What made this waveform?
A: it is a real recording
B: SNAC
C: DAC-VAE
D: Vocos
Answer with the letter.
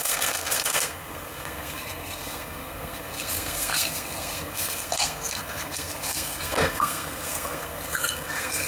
B